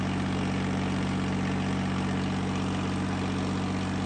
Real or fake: real